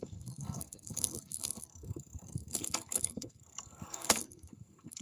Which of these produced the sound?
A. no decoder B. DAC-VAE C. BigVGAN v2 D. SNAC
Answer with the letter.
D